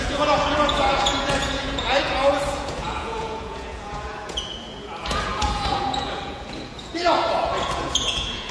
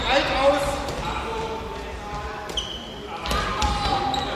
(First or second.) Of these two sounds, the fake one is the first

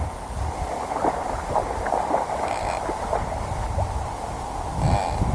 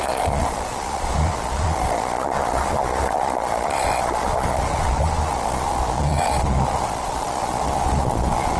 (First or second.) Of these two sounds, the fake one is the second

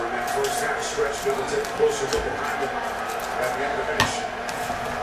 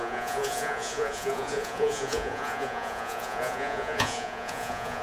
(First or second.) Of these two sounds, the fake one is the second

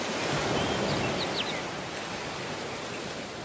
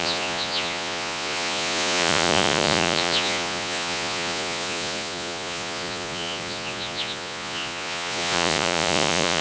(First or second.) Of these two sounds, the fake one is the second